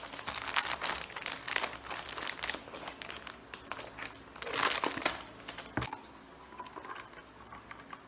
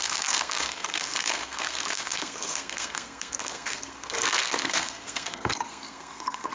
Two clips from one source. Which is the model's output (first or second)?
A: second